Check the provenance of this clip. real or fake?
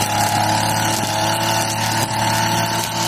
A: real